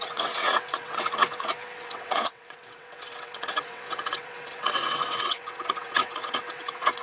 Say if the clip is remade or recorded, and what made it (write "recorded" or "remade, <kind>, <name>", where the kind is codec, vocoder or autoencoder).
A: remade, vocoder, WaveNeXt